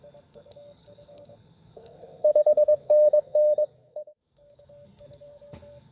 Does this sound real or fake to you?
fake